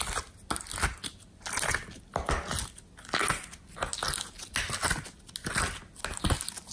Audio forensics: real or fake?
real